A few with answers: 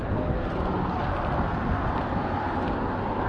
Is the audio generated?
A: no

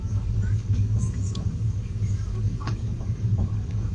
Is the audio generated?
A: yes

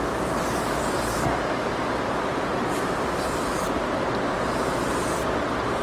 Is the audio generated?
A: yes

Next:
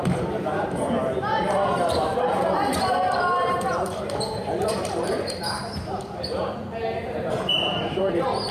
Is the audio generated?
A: yes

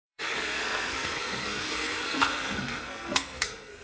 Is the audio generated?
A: yes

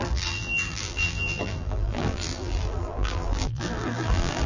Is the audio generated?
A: yes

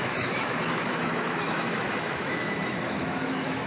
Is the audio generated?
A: yes